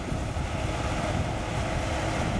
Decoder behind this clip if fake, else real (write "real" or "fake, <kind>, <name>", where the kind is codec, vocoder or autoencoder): real